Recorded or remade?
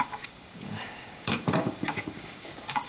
remade